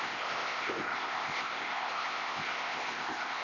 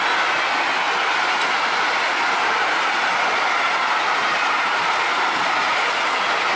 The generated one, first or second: first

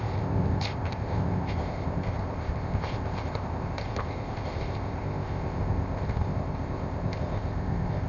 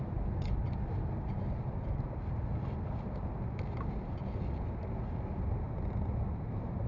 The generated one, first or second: first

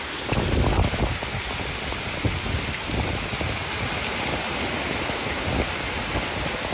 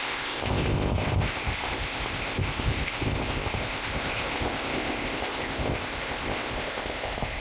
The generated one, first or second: second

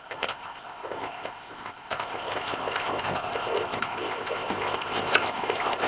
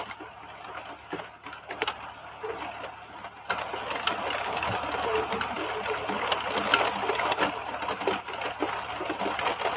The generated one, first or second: first